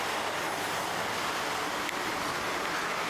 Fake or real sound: real